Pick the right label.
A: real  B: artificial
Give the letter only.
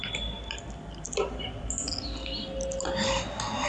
A